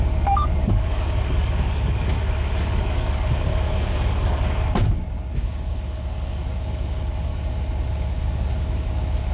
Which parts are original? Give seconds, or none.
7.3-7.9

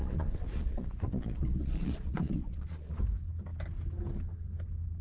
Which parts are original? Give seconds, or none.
3.0-5.0

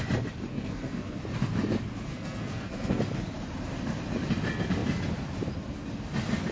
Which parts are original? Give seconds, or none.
0.0-0.5; 1.2-2.1; 3.0-6.5

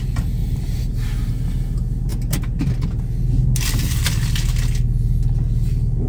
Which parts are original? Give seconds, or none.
0.0-0.4; 1.3-6.1

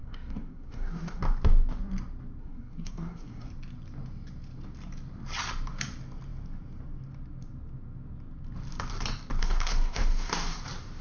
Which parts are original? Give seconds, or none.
1.2-2.4; 3.5-9.4; 10.6-11.0

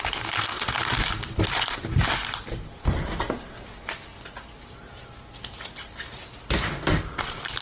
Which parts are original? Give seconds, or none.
0.0-7.6

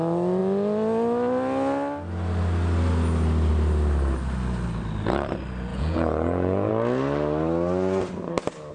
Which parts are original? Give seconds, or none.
0.0-5.7; 6.7-8.7

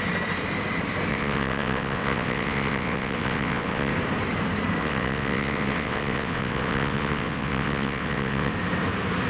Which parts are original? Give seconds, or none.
0.0-1.1; 3.9-4.8; 8.5-9.3